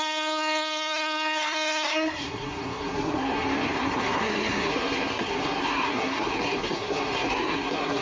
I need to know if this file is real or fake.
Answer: fake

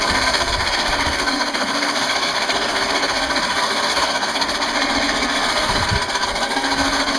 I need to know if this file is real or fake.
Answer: fake